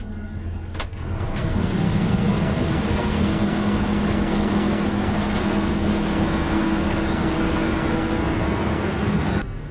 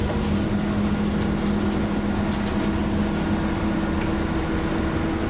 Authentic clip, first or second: second